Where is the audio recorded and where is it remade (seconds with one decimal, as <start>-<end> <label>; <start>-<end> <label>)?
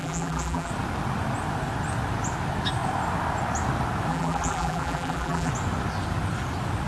0.0-0.7 remade; 0.7-4.1 recorded; 4.1-5.5 remade; 5.5-6.9 recorded